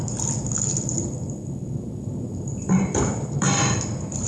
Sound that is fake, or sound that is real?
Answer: fake